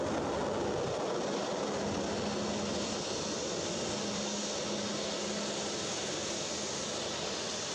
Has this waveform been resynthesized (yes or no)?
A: no